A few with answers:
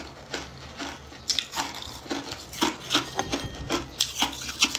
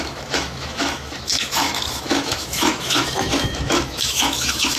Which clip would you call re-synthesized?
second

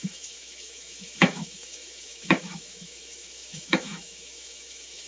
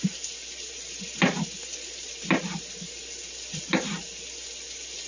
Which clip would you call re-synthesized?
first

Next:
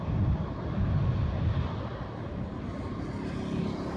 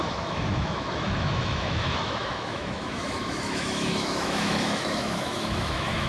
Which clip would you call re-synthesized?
second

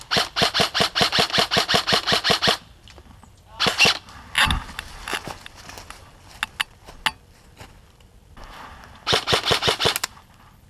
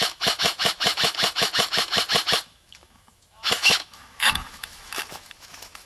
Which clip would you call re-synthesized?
second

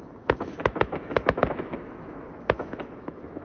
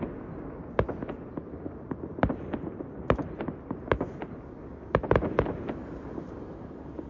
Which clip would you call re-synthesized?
first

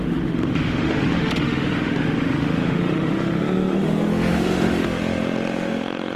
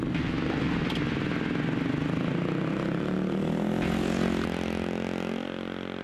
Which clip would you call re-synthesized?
first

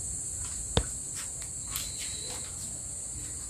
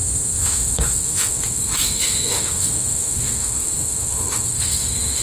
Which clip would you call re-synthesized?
second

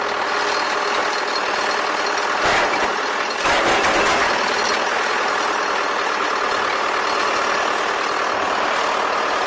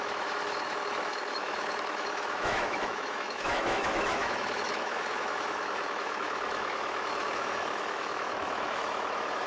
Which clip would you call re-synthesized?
second